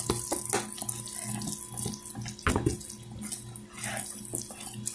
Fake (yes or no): no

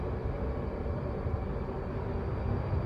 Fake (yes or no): no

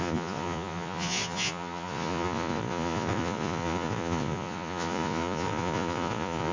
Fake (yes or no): yes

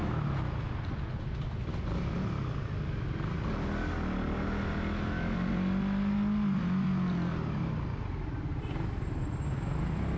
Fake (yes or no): no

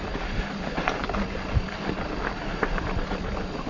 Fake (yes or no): no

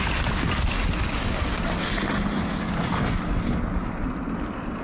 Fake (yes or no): no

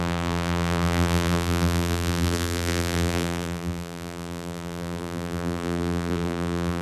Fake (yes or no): yes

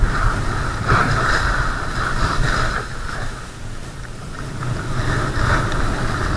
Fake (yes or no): no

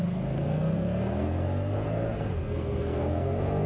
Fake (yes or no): yes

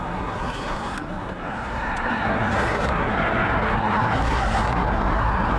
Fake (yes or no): yes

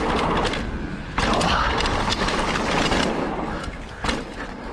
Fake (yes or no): no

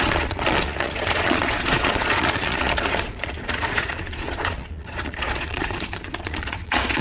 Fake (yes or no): yes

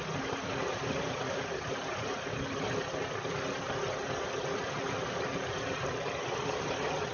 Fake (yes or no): no